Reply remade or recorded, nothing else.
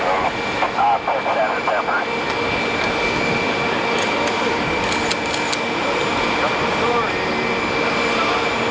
recorded